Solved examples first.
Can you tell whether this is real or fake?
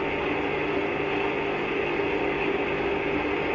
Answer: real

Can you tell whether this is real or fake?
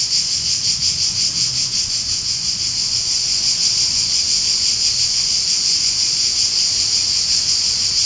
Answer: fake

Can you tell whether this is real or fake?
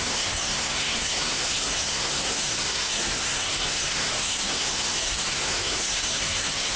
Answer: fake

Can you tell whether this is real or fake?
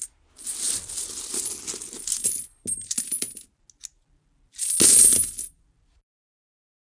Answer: real